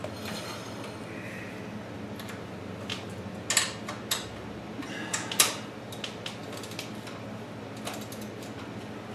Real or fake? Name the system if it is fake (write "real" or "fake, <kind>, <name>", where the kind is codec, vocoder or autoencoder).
real